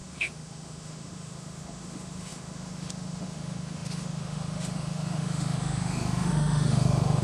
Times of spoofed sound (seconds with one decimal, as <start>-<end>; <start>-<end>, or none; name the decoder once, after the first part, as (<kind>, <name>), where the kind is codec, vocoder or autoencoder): 0.0-7.2 (autoencoder, DAC-VAE)